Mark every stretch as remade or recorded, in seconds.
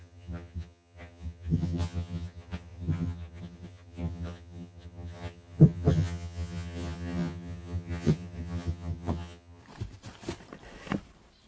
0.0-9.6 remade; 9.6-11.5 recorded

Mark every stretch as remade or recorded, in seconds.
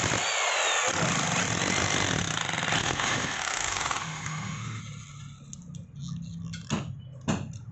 0.0-2.8 recorded; 2.8-4.8 remade; 4.8-7.7 recorded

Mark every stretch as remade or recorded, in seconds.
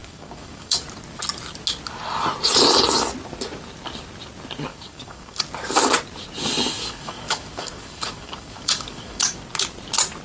0.0-0.8 remade; 0.8-4.7 recorded; 4.7-5.4 remade; 5.4-6.8 recorded; 6.8-9.4 remade; 9.4-10.2 recorded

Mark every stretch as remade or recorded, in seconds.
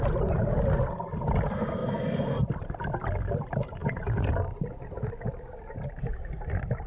0.0-6.9 recorded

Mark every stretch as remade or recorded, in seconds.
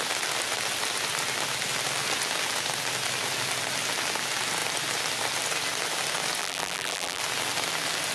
0.0-6.4 recorded; 6.4-7.2 remade; 7.2-8.1 recorded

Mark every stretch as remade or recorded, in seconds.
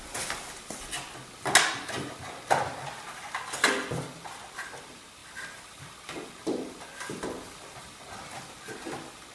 0.0-5.2 recorded; 5.2-6.3 remade; 6.3-9.3 recorded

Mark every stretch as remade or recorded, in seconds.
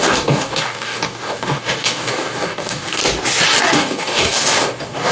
0.0-3.0 remade; 3.0-3.6 recorded; 3.6-5.1 remade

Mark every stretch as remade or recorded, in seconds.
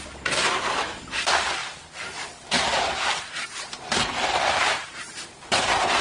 0.0-1.6 recorded; 1.6-5.2 remade; 5.2-6.0 recorded